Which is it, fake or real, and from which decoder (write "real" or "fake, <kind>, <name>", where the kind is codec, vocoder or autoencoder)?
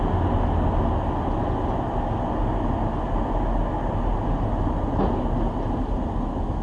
real